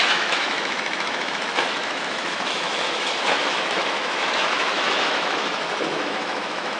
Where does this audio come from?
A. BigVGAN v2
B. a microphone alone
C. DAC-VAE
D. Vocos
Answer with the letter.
C